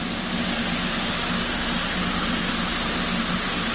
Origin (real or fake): real